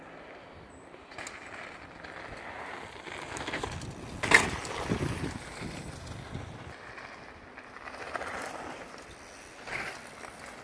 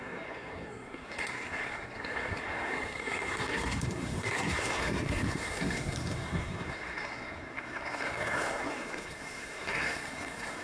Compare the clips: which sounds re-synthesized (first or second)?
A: second